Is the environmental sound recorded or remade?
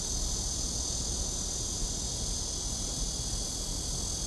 recorded